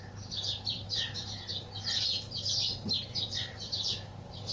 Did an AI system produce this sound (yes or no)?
no